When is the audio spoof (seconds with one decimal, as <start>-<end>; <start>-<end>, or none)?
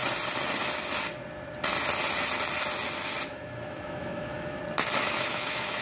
3.3-4.6; 5.1-5.8